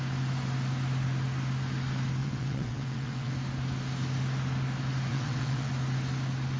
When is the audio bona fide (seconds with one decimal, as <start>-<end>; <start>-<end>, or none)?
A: 0.0-2.2; 3.3-5.1; 5.7-6.6